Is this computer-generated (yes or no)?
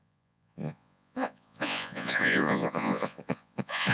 yes